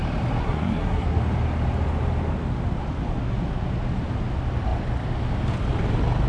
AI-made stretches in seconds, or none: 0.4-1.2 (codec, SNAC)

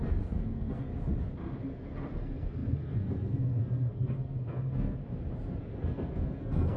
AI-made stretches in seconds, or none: 0.0-0.9 (codec, SNAC); 1.6-5.0; 5.6-6.8

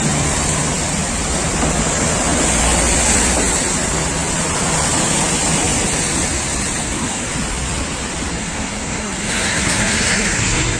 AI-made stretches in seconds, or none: 6.8-7.3 (codec, SNAC); 8.3-10.8

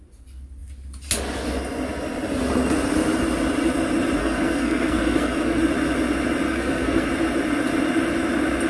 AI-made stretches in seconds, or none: 4.2-5.6 (codec, SNAC); 6.5-7.1

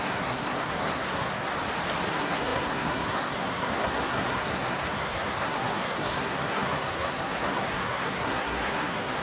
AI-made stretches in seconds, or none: 0.0-1.5 (codec, SNAC); 2.1-9.2

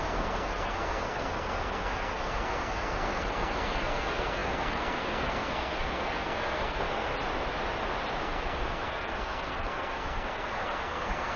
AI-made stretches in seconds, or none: 0.0-7.1 (codec, SNAC); 8.2-11.4

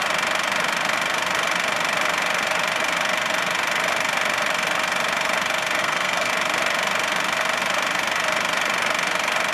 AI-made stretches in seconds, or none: 5.8-6.3 (codec, SNAC)